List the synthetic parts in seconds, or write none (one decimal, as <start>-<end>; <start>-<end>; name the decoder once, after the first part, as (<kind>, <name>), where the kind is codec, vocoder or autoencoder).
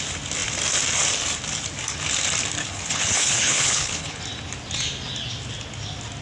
2.6-4.2 (codec, HILCodec)